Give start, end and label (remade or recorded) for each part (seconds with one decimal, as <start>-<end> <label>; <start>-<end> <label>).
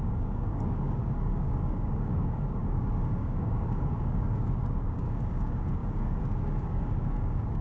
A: 0.0-7.6 remade